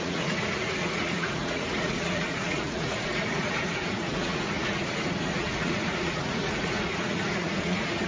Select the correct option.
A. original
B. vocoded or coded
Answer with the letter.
B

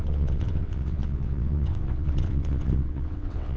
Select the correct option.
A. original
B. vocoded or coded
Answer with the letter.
B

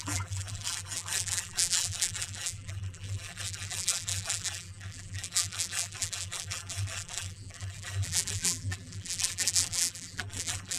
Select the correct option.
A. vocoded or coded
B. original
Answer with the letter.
A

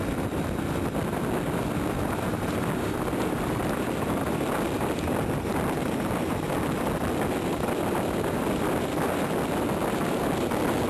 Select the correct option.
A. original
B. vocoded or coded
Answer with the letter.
A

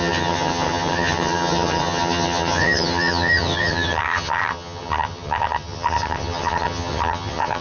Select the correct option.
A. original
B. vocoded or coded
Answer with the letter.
B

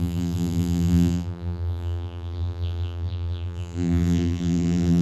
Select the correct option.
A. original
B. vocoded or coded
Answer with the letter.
B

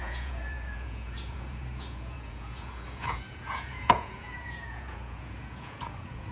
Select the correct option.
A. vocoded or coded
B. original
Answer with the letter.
A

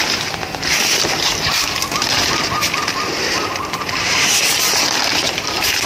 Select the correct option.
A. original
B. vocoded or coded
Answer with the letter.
A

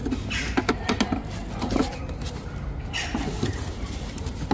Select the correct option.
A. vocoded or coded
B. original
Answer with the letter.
B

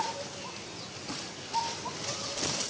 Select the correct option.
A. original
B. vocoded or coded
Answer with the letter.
A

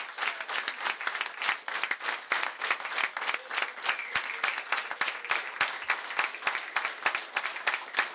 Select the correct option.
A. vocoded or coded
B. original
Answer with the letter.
B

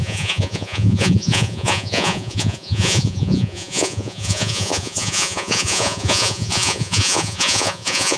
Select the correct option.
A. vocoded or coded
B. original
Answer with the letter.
A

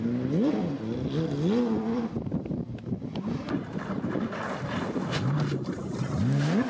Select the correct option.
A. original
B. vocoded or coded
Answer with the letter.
A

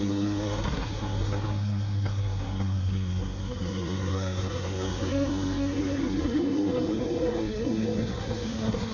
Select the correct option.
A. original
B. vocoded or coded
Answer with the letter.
B